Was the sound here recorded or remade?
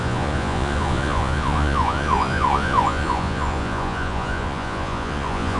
remade